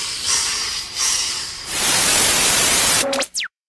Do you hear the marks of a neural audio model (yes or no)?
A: yes